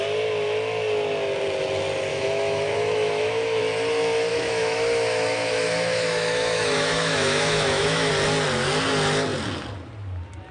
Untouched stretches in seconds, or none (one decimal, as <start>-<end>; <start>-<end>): 0.0-2.1; 3.6-4.3; 8.1-10.5